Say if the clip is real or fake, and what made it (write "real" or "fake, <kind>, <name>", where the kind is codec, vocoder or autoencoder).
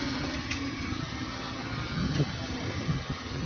fake, vocoder, HiFi-GAN